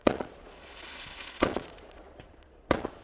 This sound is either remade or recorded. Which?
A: remade